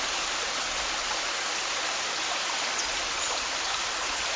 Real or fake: real